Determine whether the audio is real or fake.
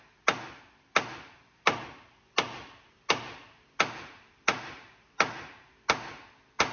real